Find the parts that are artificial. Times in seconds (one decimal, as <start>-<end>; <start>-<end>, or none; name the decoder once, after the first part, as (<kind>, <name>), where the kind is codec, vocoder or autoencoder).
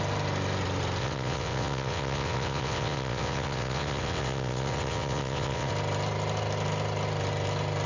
1.0-5.7 (vocoder, WaveNeXt)